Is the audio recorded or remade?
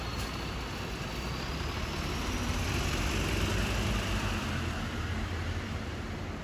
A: recorded